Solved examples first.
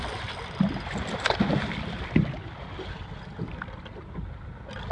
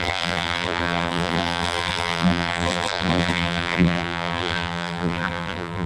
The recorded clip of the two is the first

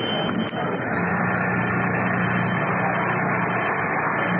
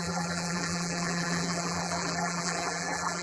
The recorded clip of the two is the first